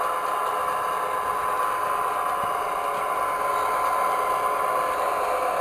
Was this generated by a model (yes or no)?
no